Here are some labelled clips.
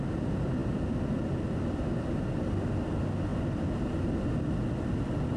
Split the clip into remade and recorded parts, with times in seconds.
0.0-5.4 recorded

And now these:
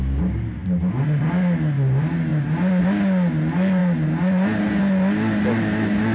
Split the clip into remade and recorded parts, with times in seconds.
0.0-6.1 recorded